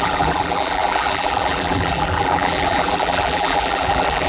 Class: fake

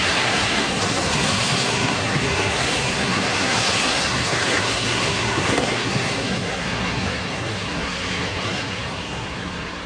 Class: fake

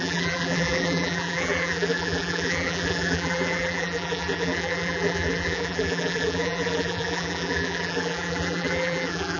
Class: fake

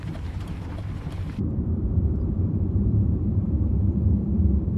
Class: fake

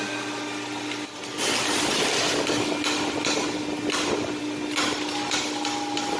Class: real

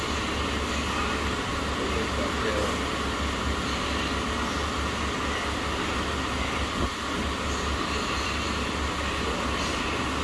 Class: real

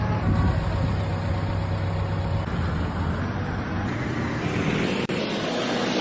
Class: real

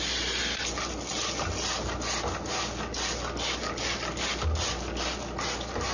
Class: real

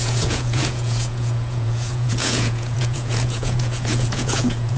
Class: fake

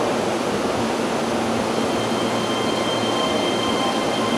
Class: real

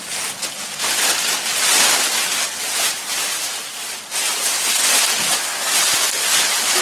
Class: real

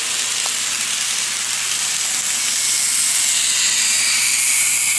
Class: real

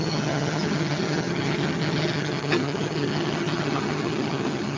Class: fake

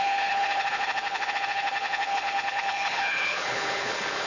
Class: fake